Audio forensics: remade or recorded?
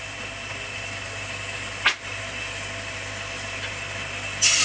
recorded